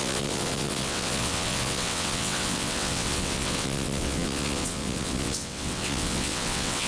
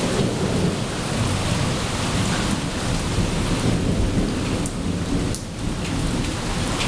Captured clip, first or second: second